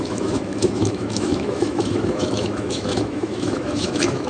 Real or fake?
fake